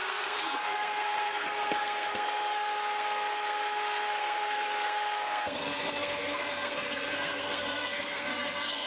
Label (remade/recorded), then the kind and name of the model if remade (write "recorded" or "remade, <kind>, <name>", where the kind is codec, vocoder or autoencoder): remade, codec, SNAC